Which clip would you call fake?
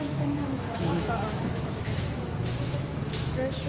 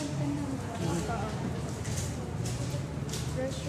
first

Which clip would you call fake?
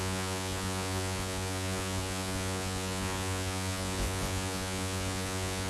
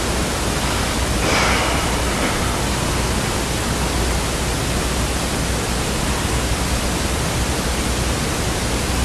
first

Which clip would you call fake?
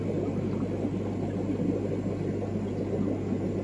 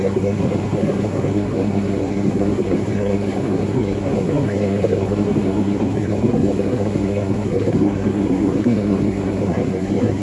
second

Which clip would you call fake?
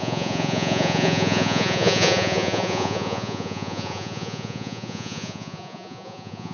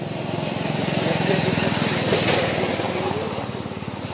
first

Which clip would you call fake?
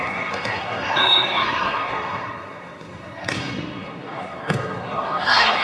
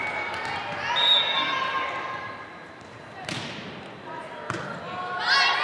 first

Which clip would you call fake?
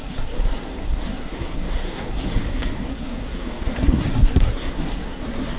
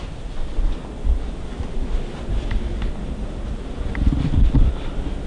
first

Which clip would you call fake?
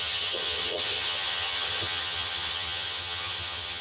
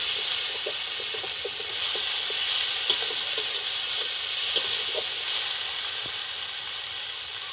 first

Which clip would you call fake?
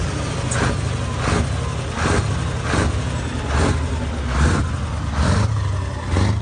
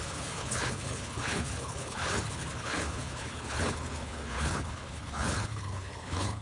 second